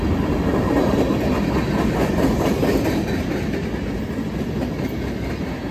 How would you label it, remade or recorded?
recorded